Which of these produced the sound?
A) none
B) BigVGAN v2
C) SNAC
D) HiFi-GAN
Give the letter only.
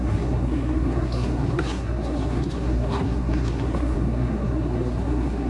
C